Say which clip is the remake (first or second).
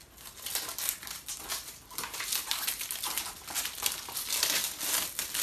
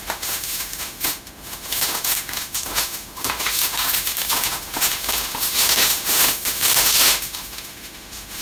second